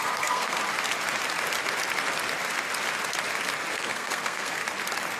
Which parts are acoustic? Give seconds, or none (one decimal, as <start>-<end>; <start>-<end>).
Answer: 0.6-3.7; 4.6-5.2